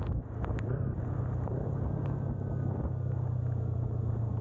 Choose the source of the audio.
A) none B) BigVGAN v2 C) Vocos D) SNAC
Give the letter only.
A